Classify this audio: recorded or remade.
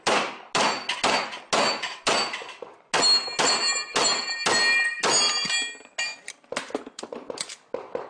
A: recorded